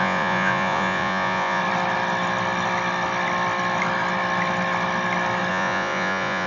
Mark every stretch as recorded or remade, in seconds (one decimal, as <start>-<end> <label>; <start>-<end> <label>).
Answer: 0.0-1.6 remade; 1.6-5.5 recorded; 5.5-6.5 remade